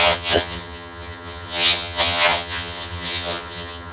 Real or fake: fake